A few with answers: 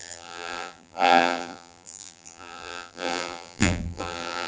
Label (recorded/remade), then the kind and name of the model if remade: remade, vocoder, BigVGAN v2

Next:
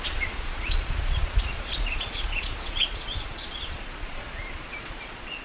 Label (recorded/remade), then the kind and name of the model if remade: remade, vocoder, Vocos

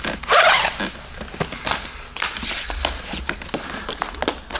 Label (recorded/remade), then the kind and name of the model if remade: recorded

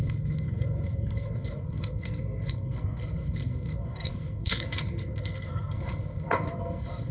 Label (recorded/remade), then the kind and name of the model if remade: remade, codec, SNAC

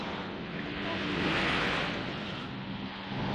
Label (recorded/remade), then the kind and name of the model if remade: recorded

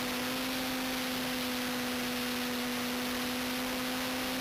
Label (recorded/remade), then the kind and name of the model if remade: recorded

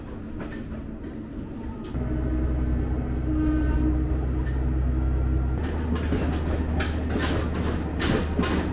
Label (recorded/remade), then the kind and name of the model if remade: recorded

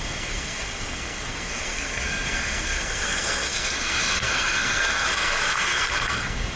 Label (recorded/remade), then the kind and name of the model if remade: remade, codec, SNAC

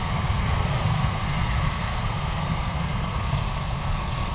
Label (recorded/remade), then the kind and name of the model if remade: remade, codec, SNAC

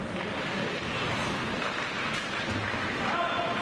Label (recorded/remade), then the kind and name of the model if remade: recorded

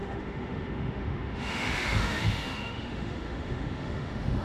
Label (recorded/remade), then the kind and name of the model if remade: remade, autoencoder, DAC-VAE